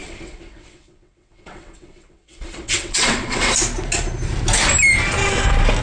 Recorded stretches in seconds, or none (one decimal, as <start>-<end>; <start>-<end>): 3.5-5.8

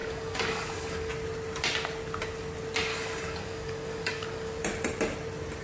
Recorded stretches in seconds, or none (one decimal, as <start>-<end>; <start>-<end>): 1.1-2.9; 4.6-5.6

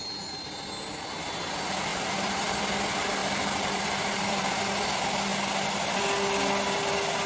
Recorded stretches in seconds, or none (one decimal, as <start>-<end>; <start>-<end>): 0.0-1.9; 2.6-3.2; 4.6-7.3